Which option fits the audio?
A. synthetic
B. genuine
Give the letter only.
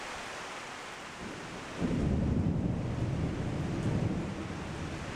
A